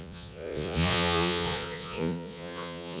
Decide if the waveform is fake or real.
fake